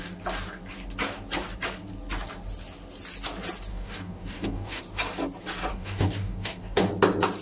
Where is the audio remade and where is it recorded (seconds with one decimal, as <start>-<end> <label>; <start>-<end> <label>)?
0.0-3.7 recorded; 3.7-4.8 remade; 4.8-5.7 recorded; 5.7-6.9 remade; 6.9-7.4 recorded